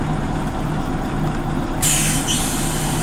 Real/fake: fake